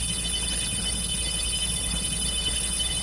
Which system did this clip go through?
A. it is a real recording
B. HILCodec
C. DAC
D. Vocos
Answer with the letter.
B